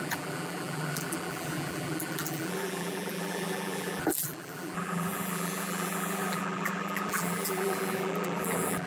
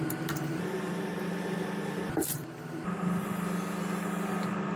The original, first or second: second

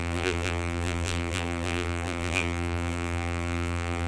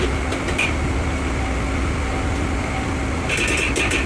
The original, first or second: second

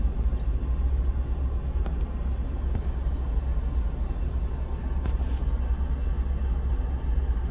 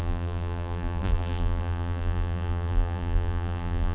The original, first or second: first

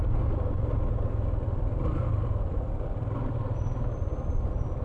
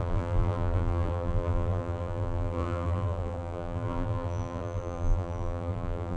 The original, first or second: first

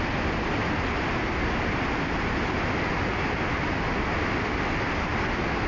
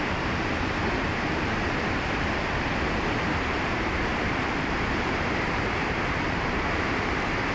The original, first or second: first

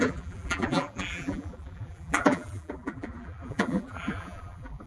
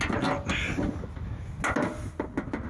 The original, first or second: second